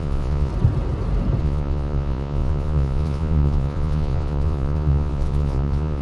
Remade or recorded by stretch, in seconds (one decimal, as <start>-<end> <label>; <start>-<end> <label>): 0.0-0.5 remade; 0.5-1.4 recorded; 1.4-6.0 remade